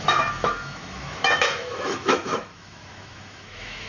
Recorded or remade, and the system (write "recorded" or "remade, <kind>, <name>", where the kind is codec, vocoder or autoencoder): remade, autoencoder, DAC-VAE